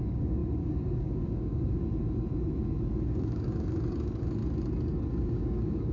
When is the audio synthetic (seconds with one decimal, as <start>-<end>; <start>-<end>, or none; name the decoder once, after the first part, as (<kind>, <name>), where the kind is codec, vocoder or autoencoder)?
0.0-1.8 (codec, DAC); 3.1-4.4; 5.2-5.9